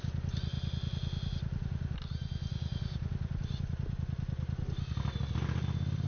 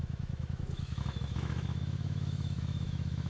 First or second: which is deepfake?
second